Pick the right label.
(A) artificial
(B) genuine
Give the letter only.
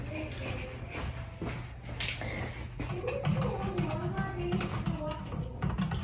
B